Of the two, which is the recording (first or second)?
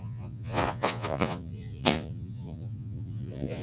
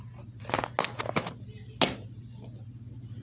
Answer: second